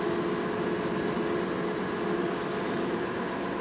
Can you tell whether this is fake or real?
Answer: real